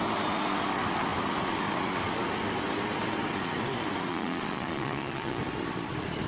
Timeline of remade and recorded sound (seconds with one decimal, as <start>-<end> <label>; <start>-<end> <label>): 0.0-4.1 recorded; 4.1-5.4 remade; 5.4-6.3 recorded